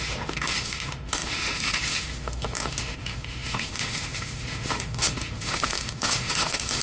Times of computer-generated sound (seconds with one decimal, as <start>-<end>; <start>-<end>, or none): 0.0-6.8